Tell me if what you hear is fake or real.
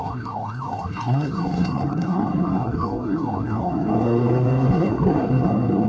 fake